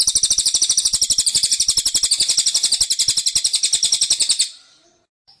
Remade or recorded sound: recorded